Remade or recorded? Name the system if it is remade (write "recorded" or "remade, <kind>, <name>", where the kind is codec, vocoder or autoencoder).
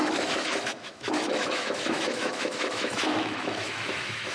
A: remade, autoencoder, DAC-VAE